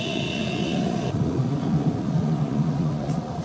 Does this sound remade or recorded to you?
remade